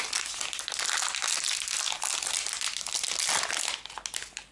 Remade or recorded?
recorded